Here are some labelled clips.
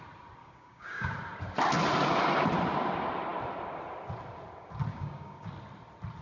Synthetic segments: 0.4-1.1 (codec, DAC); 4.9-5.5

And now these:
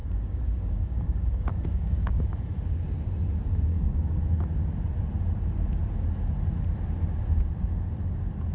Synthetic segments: 0.0-2.2 (codec, DAC); 3.7-4.2

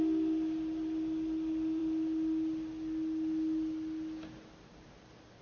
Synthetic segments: none

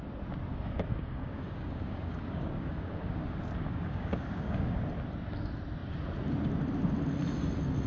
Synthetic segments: 0.5-4.8 (codec, DAC)

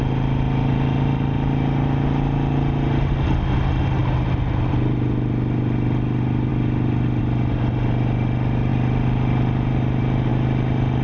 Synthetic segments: none

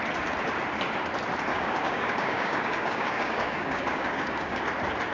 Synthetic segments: 1.5-4.6 (codec, DAC)